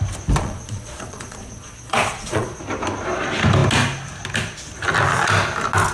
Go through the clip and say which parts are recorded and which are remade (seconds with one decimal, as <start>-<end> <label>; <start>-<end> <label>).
0.0-0.4 recorded; 0.4-2.6 remade; 2.6-5.9 recorded